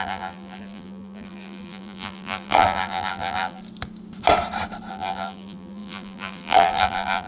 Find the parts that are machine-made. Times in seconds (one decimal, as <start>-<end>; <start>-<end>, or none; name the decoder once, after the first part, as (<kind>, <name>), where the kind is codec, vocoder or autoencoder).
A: 0.0-3.6 (vocoder, BigVGAN v2); 4.9-7.3